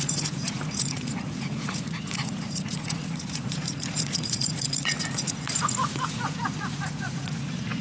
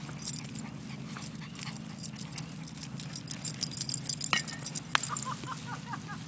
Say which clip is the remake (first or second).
first